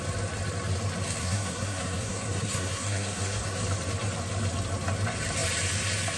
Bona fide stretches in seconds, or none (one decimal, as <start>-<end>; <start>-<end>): 0.0-1.2; 3.6-6.2